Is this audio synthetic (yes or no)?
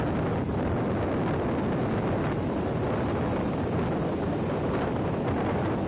no